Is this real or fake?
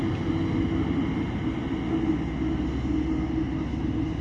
real